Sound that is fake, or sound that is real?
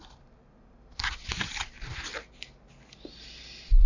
real